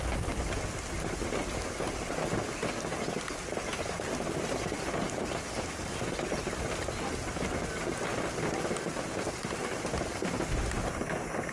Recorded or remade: recorded